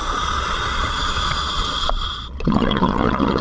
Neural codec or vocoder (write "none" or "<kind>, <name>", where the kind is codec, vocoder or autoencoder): vocoder, Vocos